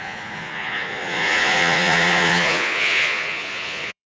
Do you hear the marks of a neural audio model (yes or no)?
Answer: yes